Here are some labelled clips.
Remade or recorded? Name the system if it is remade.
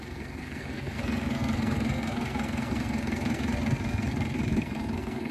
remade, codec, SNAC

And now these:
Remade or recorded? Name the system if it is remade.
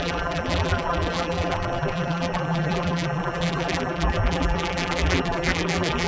remade, vocoder, BigVGAN v2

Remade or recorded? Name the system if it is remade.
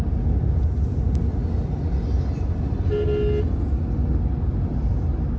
recorded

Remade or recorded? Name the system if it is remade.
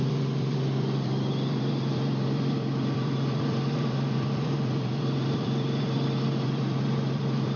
remade, vocoder, BigVGAN v2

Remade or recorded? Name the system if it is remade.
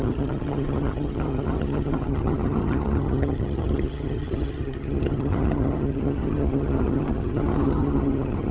remade, vocoder, HiFi-GAN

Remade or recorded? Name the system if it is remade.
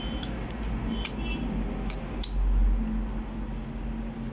recorded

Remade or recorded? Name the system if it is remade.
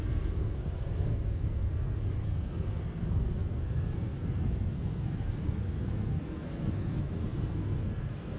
remade, codec, SNAC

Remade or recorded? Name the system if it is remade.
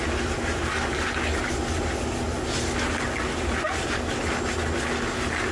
recorded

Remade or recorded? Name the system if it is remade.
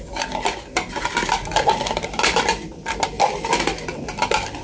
recorded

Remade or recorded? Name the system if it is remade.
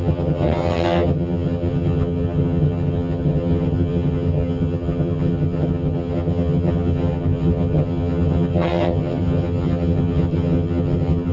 remade, vocoder, HiFi-GAN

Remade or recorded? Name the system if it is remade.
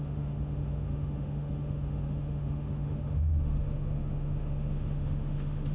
remade, autoencoder, DAC-VAE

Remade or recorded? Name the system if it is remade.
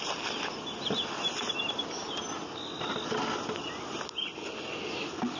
recorded